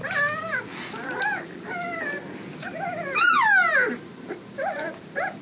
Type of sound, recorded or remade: recorded